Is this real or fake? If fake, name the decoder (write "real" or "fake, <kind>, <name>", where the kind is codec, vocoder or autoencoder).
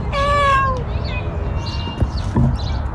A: real